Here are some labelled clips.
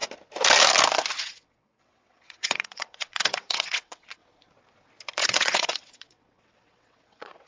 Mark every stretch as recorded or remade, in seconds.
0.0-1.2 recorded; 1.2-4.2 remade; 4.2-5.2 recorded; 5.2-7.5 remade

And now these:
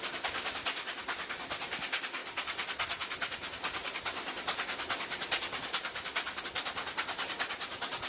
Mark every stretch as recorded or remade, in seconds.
0.0-8.1 recorded